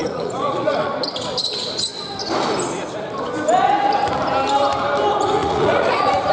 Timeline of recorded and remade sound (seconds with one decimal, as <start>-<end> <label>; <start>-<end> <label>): 0.0-0.9 remade; 0.9-5.4 recorded; 5.4-6.3 remade